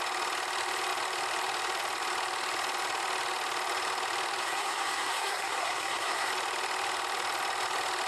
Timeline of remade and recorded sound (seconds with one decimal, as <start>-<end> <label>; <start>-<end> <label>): 0.0-4.4 recorded; 4.4-6.3 remade; 6.3-8.1 recorded